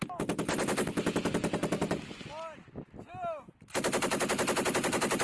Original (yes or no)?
yes